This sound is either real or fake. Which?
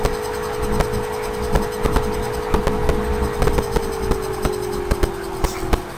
real